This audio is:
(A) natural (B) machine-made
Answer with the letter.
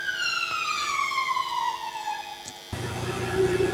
A